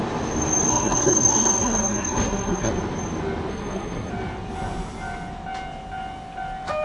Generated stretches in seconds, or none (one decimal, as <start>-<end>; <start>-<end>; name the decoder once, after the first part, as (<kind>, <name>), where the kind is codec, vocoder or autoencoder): 0.7-2.7 (codec, SNAC); 3.5-4.1